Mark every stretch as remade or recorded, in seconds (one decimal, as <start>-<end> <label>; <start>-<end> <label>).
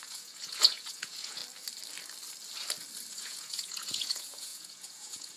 0.0-1.4 remade; 1.4-3.1 recorded; 3.1-5.4 remade